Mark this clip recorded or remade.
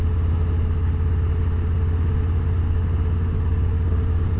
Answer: recorded